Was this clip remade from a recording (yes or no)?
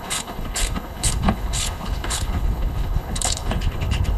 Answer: yes